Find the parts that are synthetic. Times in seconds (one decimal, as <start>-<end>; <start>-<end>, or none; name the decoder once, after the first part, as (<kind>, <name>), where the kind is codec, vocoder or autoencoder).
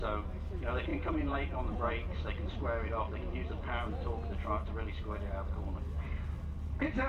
0.9-1.9 (vocoder, Vocos)